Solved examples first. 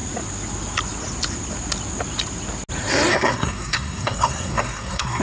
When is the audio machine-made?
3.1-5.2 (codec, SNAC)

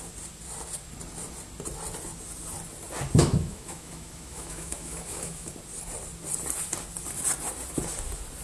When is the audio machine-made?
3.2-5.5 (autoencoder, DAC-VAE)

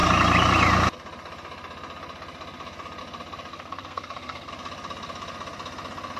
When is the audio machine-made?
3.5-4.5 (codec, SNAC)

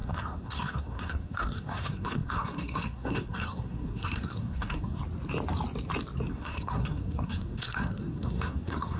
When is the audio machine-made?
0.0-5.0 (codec, SNAC); 6.3-9.0

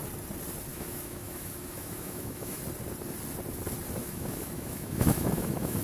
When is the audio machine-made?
0.7-2.6 (autoencoder, DAC-VAE); 4.0-5.8

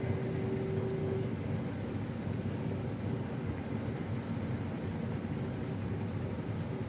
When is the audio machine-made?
1.0-3.7 (codec, DAC)

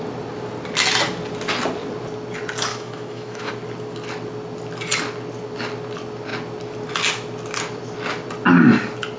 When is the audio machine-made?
2.7-3.5 (autoencoder, DAC-VAE)

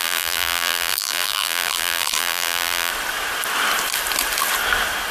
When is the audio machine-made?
0.0-2.9 (vocoder, BigVGAN v2)